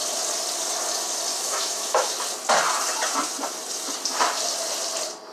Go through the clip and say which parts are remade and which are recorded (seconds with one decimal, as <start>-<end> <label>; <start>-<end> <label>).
0.0-1.3 recorded; 1.3-2.1 remade; 2.1-5.3 recorded